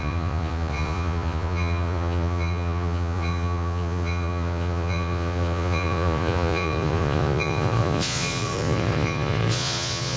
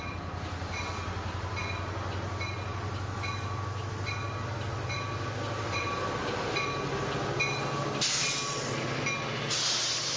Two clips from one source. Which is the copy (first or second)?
first